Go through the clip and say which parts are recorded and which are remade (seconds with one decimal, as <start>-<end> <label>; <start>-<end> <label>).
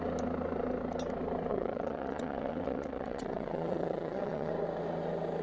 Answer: 0.0-1.5 recorded; 1.5-4.5 remade; 4.5-5.4 recorded